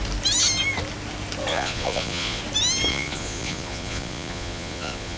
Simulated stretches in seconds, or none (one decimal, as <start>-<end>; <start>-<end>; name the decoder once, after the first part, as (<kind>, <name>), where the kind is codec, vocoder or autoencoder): 1.5-2.4 (vocoder, Vocos); 2.9-5.2